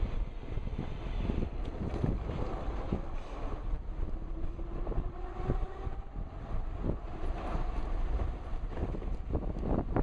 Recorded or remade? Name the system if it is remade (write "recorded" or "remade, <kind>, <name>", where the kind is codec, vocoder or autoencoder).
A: recorded